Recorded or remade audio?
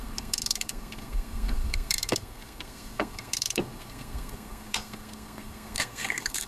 remade